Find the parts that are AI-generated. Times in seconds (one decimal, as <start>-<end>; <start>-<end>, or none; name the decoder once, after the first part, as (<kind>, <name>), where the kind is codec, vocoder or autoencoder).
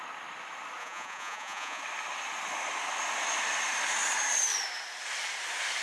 0.8-1.8 (vocoder, Vocos)